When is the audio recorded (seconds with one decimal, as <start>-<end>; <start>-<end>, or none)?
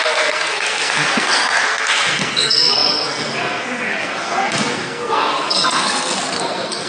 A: none